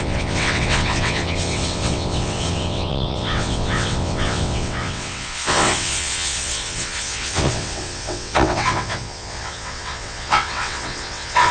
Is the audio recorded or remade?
remade